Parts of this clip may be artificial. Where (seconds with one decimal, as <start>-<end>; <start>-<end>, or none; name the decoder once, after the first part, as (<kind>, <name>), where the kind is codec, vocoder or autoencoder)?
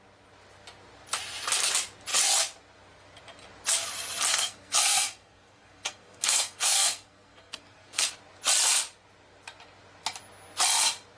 4.3-8.1 (codec, SNAC)